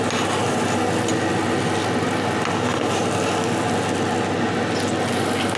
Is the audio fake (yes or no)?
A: no